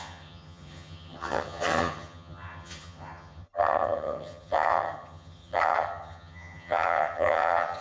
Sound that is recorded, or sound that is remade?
remade